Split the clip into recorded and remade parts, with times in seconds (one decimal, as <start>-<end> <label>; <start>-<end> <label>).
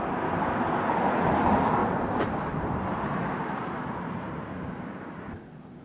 0.0-1.8 recorded; 1.8-5.3 remade; 5.3-5.8 recorded